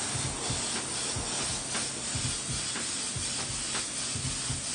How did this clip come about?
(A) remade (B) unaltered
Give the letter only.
B